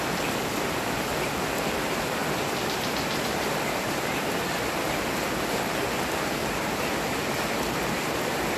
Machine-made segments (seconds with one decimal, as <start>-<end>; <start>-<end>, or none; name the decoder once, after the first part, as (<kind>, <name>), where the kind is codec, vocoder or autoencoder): none